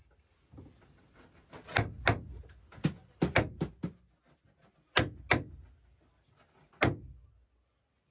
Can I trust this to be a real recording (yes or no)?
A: yes